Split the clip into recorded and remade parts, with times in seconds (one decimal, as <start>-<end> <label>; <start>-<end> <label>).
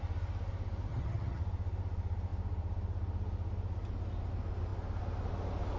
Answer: 0.0-0.9 recorded; 0.9-1.4 remade; 1.4-5.8 recorded